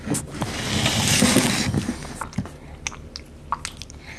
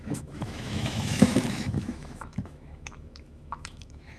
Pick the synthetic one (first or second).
second